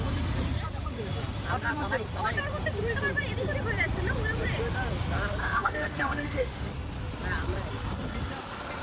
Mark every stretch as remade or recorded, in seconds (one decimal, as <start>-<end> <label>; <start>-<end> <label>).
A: 0.0-5.4 recorded; 5.4-6.7 remade; 6.7-8.8 recorded